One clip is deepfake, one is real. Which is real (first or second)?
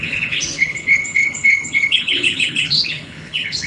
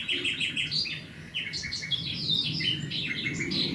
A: second